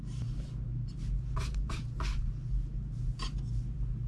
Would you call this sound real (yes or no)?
no